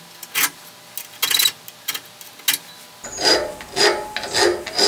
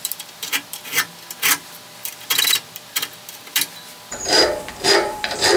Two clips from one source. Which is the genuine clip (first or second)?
first